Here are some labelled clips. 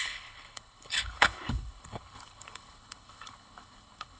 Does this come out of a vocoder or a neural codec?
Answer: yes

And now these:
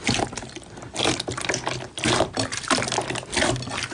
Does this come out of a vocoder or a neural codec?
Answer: no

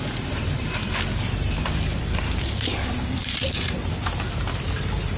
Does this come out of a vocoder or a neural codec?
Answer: yes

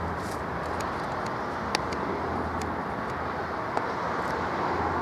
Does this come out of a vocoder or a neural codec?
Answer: no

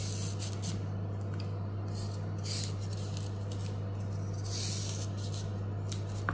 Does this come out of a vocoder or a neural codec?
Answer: no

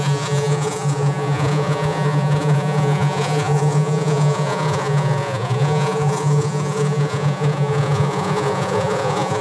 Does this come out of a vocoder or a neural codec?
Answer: yes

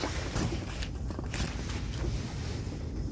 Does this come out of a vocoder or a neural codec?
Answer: no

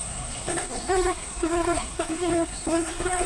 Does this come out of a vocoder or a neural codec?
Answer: yes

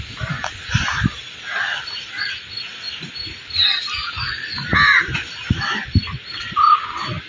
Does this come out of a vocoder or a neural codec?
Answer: no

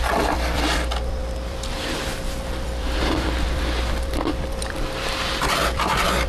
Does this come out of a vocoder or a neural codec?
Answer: yes